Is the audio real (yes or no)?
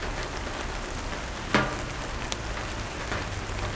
yes